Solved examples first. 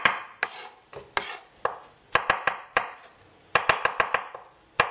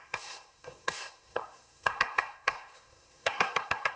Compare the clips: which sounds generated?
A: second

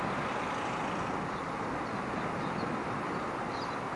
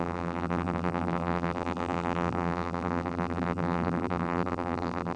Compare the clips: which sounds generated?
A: second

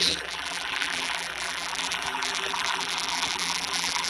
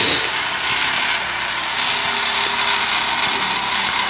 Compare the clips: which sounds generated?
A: first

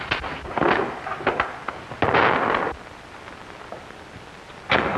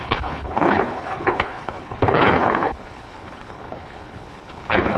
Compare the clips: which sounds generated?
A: second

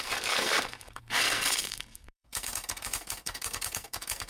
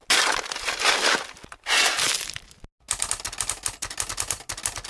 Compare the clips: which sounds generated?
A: first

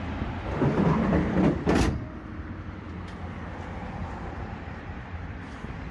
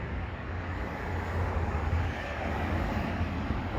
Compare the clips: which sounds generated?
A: second